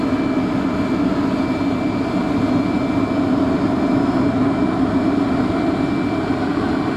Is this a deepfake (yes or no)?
no